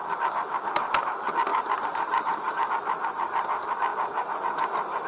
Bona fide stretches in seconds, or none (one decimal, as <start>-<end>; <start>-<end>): 0.0-5.1